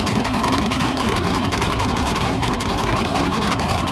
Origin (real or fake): fake